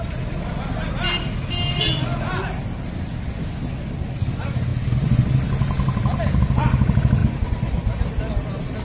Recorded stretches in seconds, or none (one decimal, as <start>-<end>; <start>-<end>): 0.0-8.8